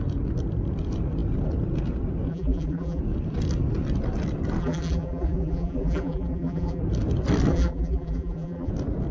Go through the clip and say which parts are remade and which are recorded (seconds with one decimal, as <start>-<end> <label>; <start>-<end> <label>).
0.0-2.3 recorded; 2.3-3.0 remade; 3.0-4.6 recorded; 4.6-6.8 remade; 6.8-7.5 recorded; 7.5-8.7 remade; 8.7-9.1 recorded